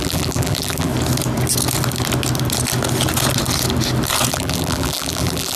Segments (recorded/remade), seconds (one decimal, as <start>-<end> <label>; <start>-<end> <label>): 0.0-0.9 remade; 0.9-4.3 recorded; 4.3-5.6 remade